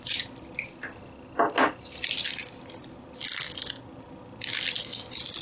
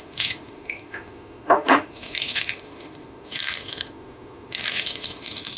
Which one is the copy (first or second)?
second